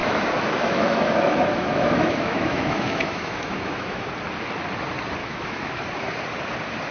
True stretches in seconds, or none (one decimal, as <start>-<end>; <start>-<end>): 4.1-5.2; 5.8-6.9